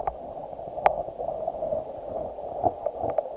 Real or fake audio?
real